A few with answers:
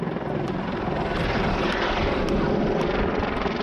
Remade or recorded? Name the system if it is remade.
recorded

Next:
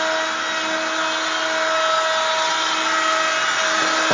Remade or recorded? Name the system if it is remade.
recorded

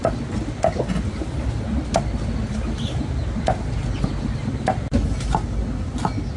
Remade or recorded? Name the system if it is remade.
recorded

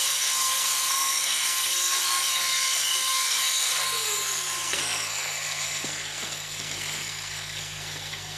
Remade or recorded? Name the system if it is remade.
remade, codec, SNAC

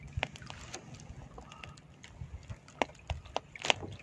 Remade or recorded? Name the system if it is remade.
recorded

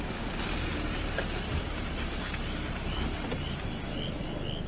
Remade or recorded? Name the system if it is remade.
recorded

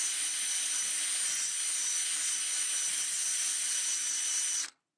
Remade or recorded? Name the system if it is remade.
recorded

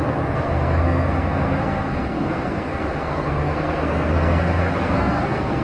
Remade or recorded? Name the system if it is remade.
remade, codec, SNAC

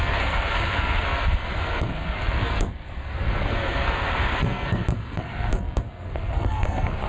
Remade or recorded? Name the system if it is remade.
remade, codec, SNAC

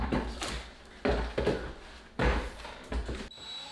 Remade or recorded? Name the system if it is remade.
recorded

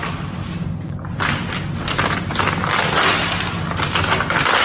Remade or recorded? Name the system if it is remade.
recorded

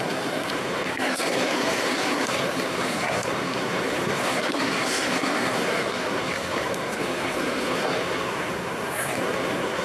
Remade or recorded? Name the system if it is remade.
remade, codec, SNAC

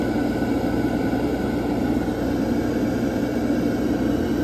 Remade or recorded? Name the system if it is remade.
recorded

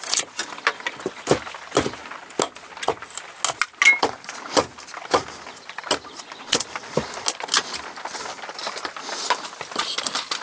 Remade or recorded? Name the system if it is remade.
recorded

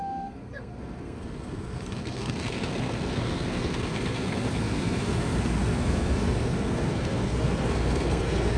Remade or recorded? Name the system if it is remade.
remade, codec, SNAC